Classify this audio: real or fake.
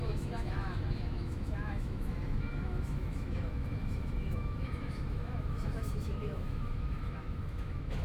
fake